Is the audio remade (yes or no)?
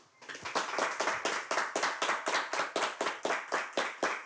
no